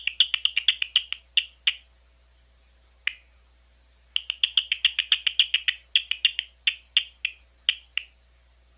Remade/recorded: recorded